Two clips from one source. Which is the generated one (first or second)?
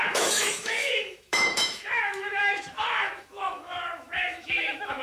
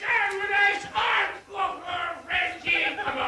first